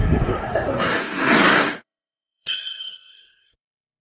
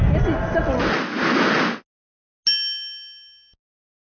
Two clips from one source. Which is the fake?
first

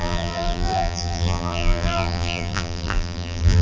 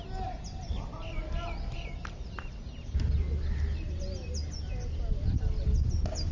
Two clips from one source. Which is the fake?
first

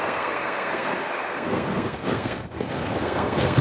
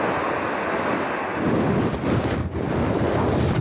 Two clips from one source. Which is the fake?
first